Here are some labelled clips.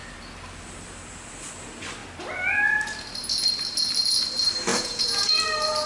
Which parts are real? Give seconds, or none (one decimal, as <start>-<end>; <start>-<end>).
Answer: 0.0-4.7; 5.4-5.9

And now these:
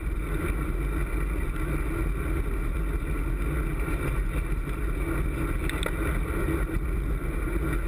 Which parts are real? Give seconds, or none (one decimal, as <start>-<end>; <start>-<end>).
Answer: 0.0-3.7; 4.8-7.9

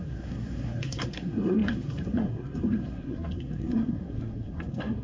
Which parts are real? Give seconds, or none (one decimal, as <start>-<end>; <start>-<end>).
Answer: none

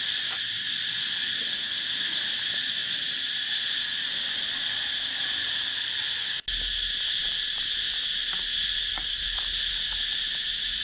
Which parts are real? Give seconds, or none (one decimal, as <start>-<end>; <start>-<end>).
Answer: 0.0-10.8

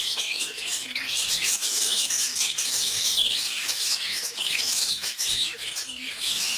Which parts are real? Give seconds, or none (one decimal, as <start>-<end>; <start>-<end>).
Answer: none

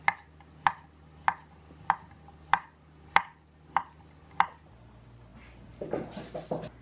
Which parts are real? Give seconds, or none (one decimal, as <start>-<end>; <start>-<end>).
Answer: 0.0-6.8